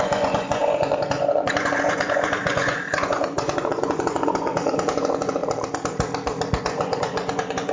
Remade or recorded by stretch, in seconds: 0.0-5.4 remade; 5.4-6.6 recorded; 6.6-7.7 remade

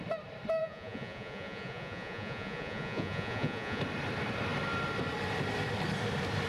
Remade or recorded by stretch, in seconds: 0.0-0.6 recorded; 0.6-3.8 remade; 3.8-6.5 recorded

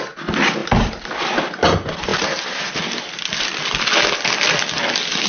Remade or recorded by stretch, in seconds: 0.0-5.3 recorded